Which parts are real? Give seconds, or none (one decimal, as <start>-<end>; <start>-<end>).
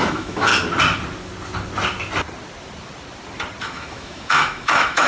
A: 0.5-3.6